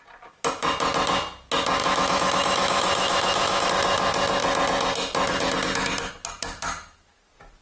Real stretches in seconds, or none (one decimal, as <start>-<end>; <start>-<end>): 0.0-1.8; 3.7-7.6